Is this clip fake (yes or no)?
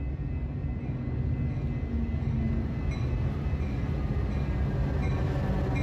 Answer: no